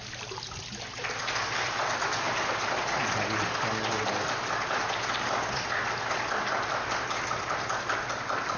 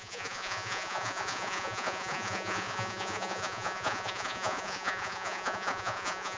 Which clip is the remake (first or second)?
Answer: second